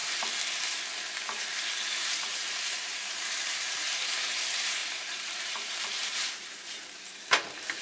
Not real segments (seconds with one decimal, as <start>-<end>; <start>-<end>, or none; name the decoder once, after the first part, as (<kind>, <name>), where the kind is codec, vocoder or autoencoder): 1.9-7.8 (vocoder, BigVGAN v2)